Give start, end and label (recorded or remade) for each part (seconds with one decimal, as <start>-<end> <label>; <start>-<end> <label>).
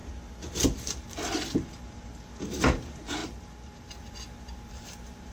0.0-0.8 recorded; 0.8-5.3 remade